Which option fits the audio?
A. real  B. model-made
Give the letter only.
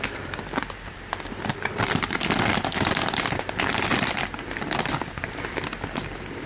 B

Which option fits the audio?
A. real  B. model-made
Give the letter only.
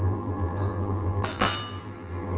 B